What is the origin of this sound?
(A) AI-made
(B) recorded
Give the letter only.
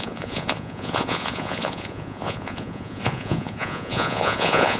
A